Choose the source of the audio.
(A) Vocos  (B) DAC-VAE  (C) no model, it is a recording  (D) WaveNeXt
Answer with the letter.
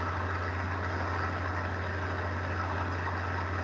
C